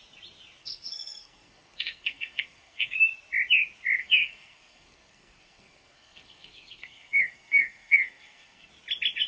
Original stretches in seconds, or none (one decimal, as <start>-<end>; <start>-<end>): 0.0-0.6; 3.0-4.0; 8.7-9.3